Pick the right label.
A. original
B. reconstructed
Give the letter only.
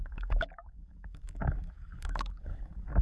B